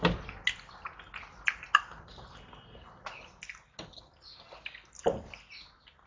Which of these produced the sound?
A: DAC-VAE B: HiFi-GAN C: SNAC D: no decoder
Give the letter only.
D